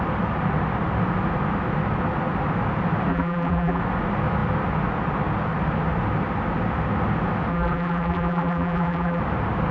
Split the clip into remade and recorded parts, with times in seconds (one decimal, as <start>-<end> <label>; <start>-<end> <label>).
0.0-3.1 recorded; 3.1-3.8 remade; 3.8-7.5 recorded; 7.5-9.2 remade; 9.2-9.7 recorded